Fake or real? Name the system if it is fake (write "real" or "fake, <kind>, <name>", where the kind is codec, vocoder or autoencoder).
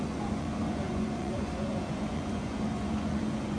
fake, vocoder, Vocos